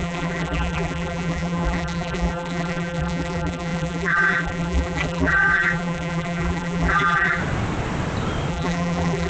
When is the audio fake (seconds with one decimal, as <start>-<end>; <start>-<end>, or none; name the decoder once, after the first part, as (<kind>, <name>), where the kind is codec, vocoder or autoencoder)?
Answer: 0.0-7.4 (vocoder, BigVGAN v2); 8.5-9.3

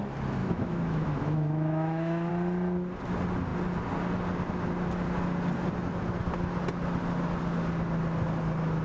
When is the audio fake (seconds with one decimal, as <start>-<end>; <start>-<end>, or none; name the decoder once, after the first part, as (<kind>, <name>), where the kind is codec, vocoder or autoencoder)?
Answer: 0.4-2.3 (autoencoder, DAC-VAE)

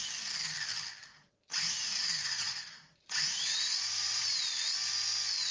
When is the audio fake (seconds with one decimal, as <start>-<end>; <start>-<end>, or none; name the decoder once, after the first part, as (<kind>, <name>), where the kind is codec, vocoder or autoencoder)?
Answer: 1.1-4.4 (vocoder, Vocos)